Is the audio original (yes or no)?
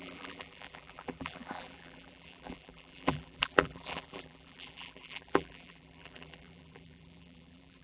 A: no